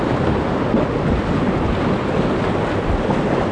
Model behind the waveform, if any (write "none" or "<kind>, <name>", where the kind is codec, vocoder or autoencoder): none